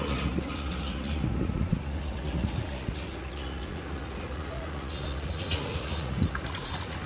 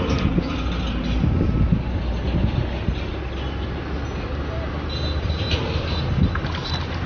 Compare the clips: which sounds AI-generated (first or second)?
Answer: first